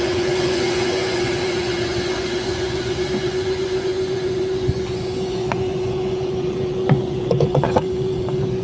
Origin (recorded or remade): remade